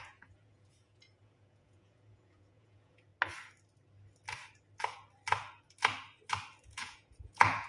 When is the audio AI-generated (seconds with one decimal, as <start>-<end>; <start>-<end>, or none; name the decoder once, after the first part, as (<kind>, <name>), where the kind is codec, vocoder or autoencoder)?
0.0-3.1 (vocoder, Vocos); 6.6-7.7